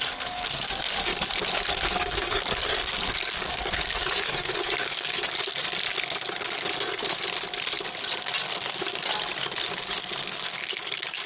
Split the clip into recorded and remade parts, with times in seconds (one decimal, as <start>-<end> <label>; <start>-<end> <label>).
0.0-1.1 remade; 1.1-1.9 recorded; 1.9-5.6 remade; 5.6-8.7 recorded; 8.7-9.1 remade; 9.1-10.2 recorded; 10.2-11.3 remade